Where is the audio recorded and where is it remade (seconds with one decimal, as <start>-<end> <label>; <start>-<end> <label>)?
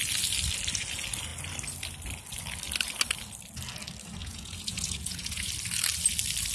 0.0-4.2 recorded; 4.2-5.5 remade; 5.5-6.5 recorded